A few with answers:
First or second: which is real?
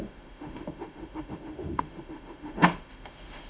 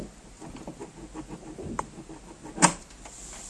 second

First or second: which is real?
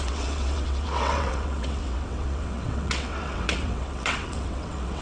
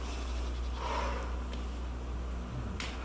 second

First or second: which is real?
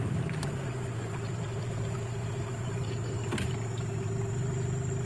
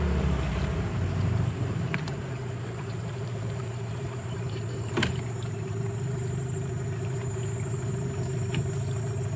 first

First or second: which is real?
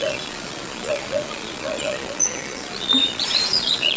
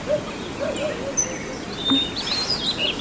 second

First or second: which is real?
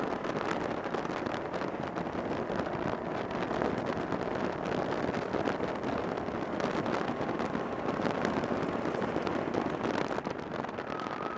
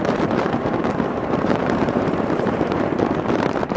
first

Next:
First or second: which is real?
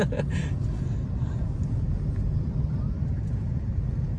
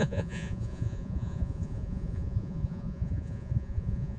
first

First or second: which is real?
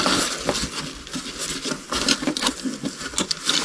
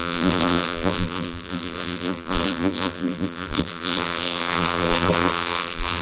first